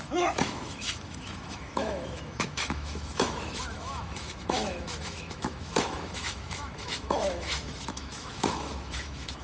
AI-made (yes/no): yes